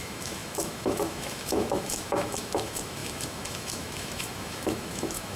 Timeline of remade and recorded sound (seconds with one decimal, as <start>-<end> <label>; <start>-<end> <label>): 0.0-5.4 remade